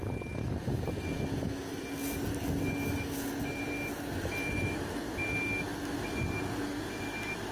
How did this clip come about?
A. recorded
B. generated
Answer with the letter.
A